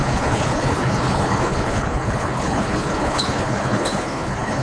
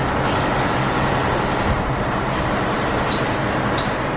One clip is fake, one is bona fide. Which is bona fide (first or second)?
second